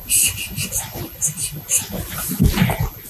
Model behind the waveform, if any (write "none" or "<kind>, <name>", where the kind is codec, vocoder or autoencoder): none